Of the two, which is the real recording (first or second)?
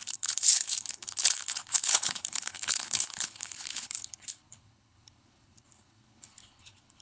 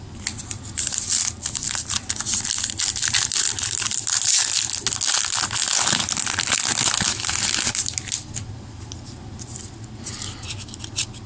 second